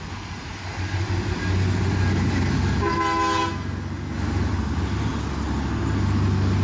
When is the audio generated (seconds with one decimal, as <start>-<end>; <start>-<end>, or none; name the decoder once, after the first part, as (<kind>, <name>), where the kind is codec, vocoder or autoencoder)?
none